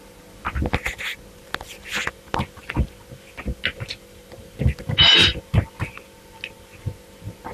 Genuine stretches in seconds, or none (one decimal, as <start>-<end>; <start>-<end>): 0.0-7.5